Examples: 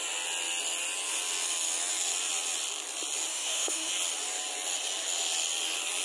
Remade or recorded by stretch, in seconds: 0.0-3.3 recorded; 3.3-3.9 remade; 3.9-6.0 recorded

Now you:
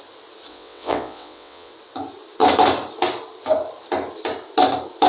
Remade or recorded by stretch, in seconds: 0.0-0.5 recorded; 0.5-1.7 remade; 1.7-5.1 recorded

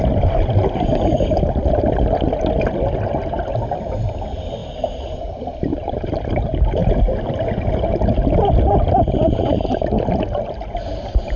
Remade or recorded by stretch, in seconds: 0.0-4.6 remade; 4.6-5.3 recorded; 5.3-6.8 remade; 6.8-10.9 recorded; 10.9-11.4 remade

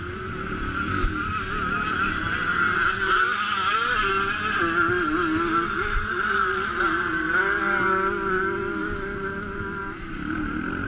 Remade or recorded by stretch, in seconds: 0.0-10.9 recorded

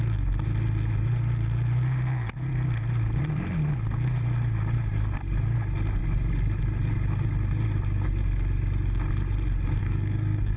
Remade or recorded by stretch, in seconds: 0.0-9.8 recorded; 9.8-10.6 remade

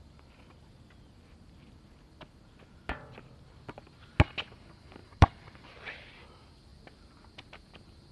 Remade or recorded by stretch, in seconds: 0.0-5.0 recorded; 5.0-5.6 remade; 5.6-8.1 recorded

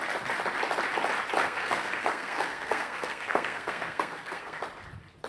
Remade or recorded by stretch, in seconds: 0.0-1.4 recorded; 1.4-4.6 remade; 4.6-5.3 recorded